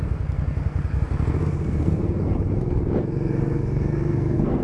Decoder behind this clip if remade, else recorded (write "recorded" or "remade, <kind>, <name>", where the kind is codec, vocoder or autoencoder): remade, codec, SNAC